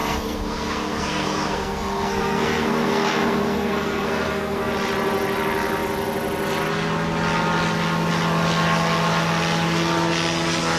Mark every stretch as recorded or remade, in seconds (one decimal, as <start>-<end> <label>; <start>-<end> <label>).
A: 0.0-4.7 remade; 4.7-10.8 recorded